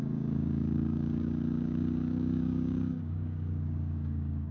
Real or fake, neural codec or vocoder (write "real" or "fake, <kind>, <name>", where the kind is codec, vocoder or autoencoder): fake, codec, DAC